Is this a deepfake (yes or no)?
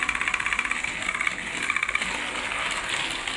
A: no